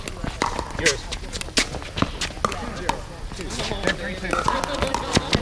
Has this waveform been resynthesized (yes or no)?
no